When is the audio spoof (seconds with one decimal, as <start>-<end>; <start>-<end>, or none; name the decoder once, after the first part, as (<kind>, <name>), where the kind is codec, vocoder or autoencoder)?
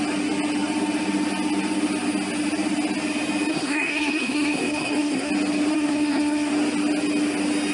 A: 3.5-5.3 (codec, SNAC); 5.7-6.5